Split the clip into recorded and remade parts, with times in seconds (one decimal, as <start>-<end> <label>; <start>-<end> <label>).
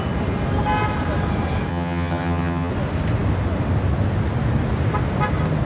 0.0-1.7 recorded; 1.7-2.7 remade; 2.7-5.7 recorded